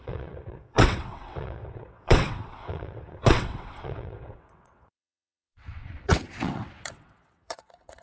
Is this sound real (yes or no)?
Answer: no